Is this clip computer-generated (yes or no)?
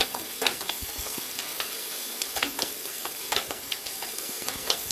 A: yes